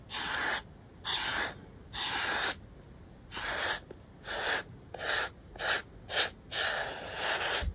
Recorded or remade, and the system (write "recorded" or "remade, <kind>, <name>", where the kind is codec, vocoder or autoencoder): recorded